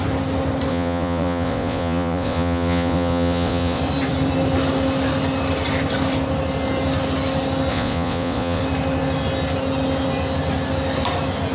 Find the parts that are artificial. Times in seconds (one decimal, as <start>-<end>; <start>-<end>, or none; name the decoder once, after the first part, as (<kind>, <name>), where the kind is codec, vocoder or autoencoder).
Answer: 0.7-3.8 (vocoder, Vocos); 7.7-8.6